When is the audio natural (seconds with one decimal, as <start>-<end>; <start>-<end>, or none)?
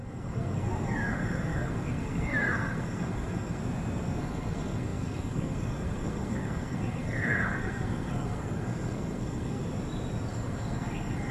3.6-4.2; 9.6-10.3